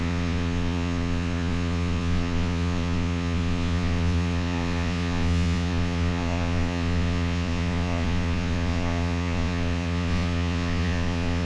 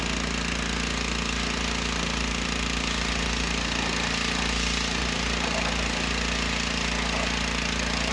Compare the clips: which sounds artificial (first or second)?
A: first